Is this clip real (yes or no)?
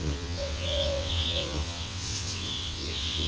no